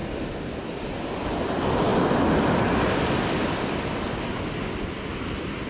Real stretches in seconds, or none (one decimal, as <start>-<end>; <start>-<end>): 0.0-5.7